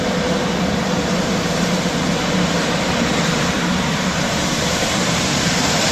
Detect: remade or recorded remade